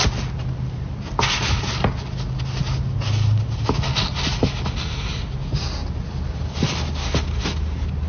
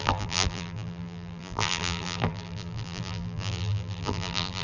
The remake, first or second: second